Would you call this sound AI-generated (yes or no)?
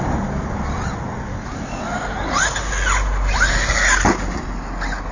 no